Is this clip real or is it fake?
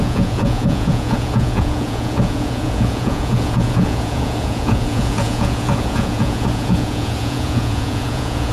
fake